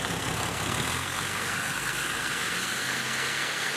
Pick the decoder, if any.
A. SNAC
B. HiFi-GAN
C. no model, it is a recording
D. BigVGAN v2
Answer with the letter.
A